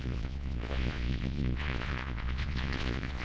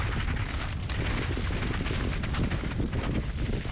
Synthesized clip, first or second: first